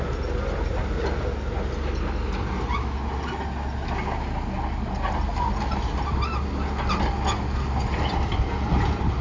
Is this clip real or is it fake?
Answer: real